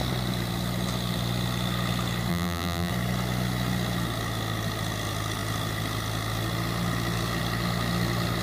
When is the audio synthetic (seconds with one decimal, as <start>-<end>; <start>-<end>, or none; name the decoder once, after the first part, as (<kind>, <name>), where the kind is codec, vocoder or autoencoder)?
2.3-2.9 (vocoder, BigVGAN v2)